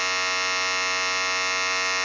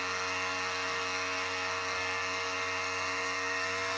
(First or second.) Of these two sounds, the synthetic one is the second